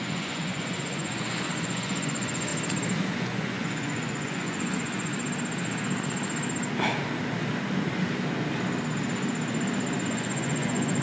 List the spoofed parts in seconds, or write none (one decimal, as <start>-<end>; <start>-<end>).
0.0-2.5; 3.1-5.1; 10.1-11.0